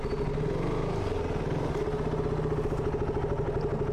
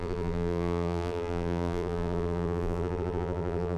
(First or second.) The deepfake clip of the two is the second